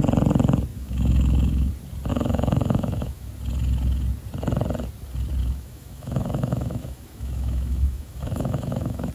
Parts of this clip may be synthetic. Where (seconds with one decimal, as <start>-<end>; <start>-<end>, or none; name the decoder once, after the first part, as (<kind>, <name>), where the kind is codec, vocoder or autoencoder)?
0.7-1.7 (autoencoder, DAC-VAE); 2.1-3.3; 5.4-9.1